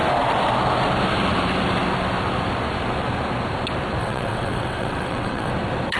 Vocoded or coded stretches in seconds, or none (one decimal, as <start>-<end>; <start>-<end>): 4.0-5.5